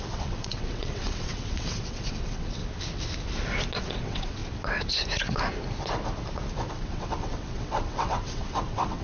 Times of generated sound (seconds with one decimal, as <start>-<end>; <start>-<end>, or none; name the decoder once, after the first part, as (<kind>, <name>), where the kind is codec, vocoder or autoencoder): 0.0-2.6 (vocoder, WaveNeXt); 3.8-4.4; 6.7-9.0